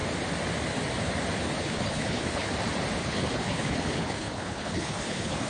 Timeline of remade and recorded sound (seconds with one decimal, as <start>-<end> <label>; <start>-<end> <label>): 0.0-1.6 recorded; 1.6-2.5 remade; 2.5-3.0 recorded; 3.0-5.5 remade

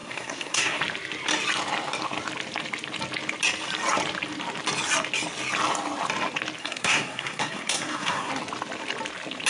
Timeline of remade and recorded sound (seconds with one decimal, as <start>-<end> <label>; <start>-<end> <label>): 0.0-0.8 remade; 0.8-6.6 recorded; 6.6-8.3 remade; 8.3-9.5 recorded

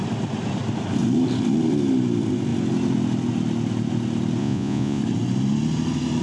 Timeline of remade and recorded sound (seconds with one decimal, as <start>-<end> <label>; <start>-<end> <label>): 0.0-4.4 recorded; 4.4-5.0 remade; 5.0-6.2 recorded

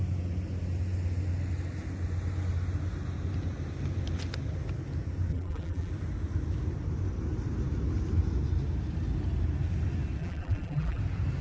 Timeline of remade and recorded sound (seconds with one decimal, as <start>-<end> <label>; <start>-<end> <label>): 0.0-5.3 recorded; 5.3-5.9 remade; 5.9-10.2 recorded; 10.2-11.0 remade; 11.0-11.4 recorded